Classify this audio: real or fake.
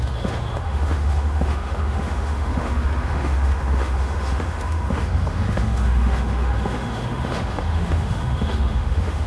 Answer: fake